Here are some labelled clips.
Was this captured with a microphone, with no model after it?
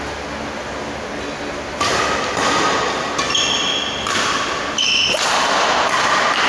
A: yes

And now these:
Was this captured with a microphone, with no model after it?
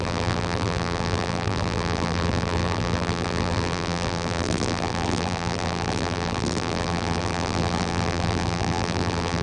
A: no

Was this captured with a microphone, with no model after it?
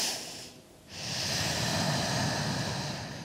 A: yes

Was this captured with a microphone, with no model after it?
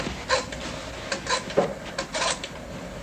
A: yes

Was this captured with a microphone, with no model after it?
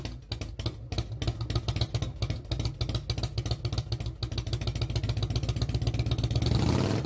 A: yes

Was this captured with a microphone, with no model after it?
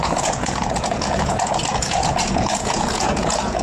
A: no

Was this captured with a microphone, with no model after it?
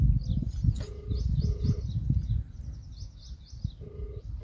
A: yes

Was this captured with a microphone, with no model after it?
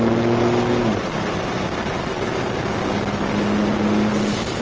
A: yes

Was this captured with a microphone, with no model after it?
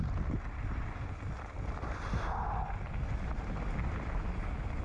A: yes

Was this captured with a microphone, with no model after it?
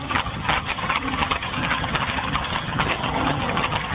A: no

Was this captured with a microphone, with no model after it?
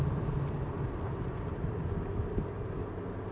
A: yes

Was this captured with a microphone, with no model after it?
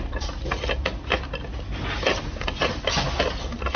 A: yes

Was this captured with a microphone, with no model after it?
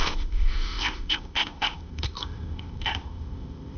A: no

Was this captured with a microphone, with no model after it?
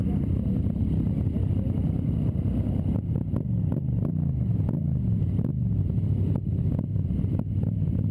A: yes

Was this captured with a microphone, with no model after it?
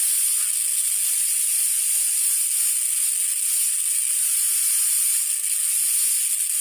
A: yes